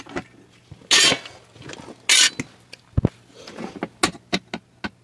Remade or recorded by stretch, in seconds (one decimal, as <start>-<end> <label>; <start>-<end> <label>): 0.0-5.0 recorded